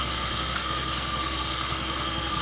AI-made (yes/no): yes